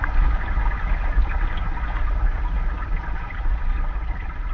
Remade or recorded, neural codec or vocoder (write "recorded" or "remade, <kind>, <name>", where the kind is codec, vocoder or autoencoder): recorded